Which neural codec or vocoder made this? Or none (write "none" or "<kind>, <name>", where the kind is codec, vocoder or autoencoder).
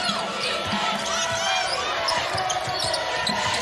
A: none